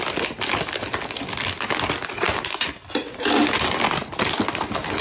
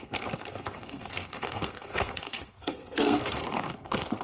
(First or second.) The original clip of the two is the first